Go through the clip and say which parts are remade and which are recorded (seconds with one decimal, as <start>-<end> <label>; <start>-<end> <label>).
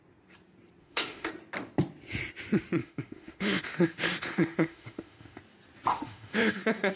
0.0-0.8 recorded; 0.8-1.3 remade; 1.3-2.8 recorded; 2.8-5.4 remade; 5.4-5.9 recorded; 5.9-7.0 remade